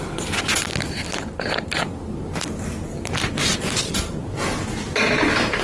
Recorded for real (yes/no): yes